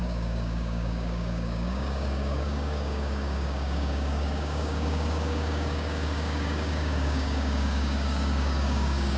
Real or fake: fake